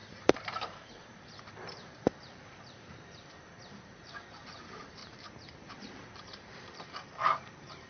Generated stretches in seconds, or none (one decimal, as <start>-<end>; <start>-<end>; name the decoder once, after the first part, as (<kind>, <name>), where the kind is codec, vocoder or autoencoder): 0.0-5.0 (vocoder, BigVGAN v2); 5.6-7.9